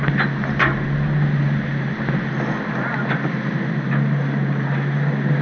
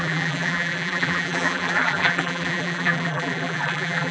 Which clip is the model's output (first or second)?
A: second